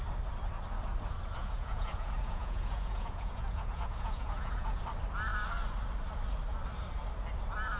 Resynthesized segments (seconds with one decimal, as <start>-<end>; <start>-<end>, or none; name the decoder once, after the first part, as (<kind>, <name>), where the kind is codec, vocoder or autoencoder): 1.4-4.8 (vocoder, Vocos)